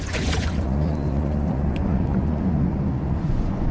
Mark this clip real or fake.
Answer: fake